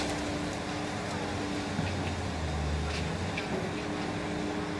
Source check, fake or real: real